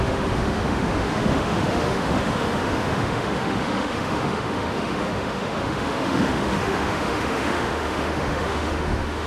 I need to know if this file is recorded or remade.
remade